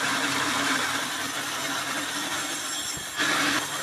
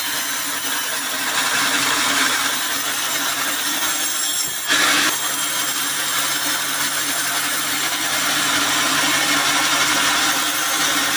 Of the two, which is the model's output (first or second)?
first